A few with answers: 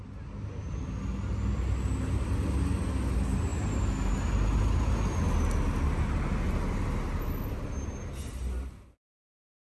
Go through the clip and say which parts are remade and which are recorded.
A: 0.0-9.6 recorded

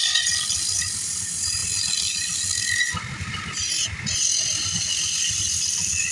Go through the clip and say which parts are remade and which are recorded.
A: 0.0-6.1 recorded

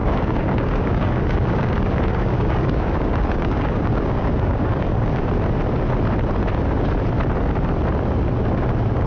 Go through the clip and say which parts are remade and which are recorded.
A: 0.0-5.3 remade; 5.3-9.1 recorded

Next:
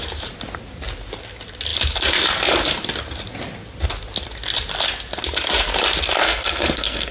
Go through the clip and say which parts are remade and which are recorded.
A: 0.0-6.2 recorded; 6.2-7.1 remade

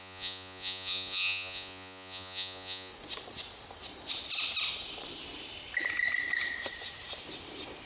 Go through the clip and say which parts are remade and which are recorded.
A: 0.0-2.9 remade; 2.9-7.9 recorded